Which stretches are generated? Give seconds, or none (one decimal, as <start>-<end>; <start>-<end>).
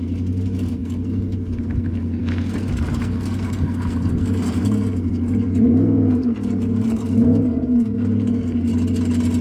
0.0-8.7